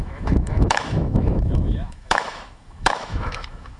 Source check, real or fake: fake